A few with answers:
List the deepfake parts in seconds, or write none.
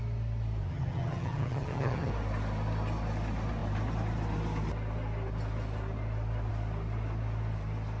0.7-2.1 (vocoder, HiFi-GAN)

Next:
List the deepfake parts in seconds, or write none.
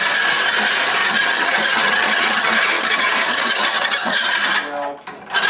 1.0-4.3 (vocoder, HiFi-GAN)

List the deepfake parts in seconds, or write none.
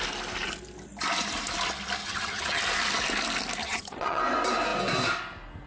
2.0-2.6 (vocoder, HiFi-GAN); 3.6-4.2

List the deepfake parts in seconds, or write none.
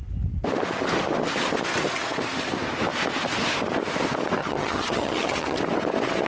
4.4-5.6 (vocoder, HiFi-GAN)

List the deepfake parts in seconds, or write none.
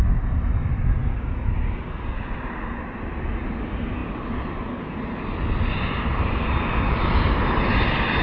none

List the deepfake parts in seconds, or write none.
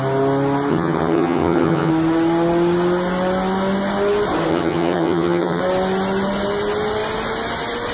0.7-1.9 (vocoder, HiFi-GAN); 4.5-5.6